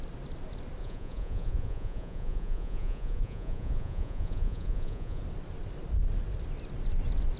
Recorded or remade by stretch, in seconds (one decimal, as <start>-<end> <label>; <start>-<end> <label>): 0.0-0.8 recorded; 0.8-5.2 remade; 5.2-7.4 recorded